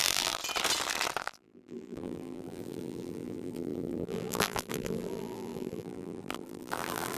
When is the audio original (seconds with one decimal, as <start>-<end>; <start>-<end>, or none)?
0.4-1.2